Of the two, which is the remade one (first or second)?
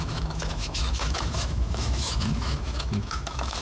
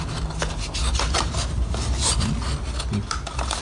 first